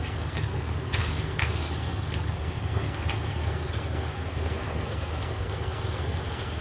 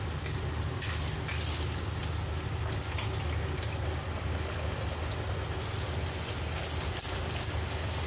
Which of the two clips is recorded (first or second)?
second